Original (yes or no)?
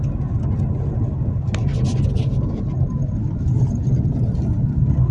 yes